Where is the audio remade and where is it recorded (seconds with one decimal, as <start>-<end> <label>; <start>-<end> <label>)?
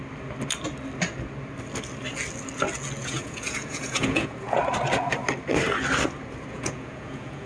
0.0-3.0 recorded; 3.0-4.6 remade; 4.6-6.5 recorded; 6.5-7.5 remade